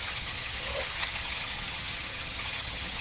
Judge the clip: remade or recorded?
remade